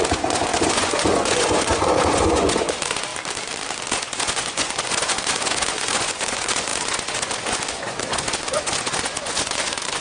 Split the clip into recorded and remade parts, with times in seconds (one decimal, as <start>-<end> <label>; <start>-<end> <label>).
0.0-3.1 remade; 3.1-3.9 recorded; 3.9-10.0 remade